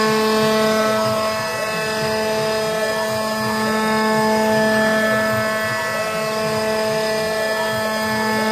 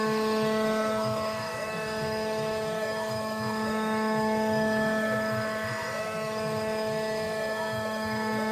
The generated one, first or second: second